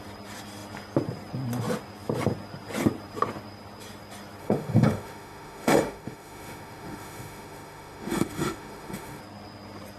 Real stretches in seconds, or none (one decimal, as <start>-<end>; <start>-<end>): 0.0-4.4; 9.2-10.0